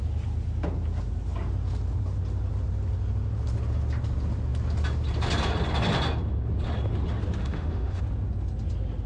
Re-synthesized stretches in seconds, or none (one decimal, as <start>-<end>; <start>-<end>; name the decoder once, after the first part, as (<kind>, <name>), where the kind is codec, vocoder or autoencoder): 7.4-8.0 (autoencoder, DAC-VAE)